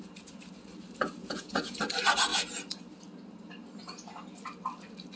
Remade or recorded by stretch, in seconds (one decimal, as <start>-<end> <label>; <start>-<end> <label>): 0.0-1.2 recorded; 1.2-1.8 remade; 1.8-5.2 recorded